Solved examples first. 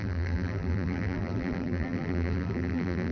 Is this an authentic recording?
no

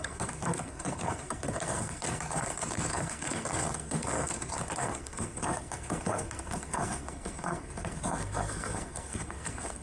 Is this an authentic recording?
no